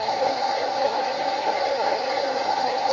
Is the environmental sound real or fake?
fake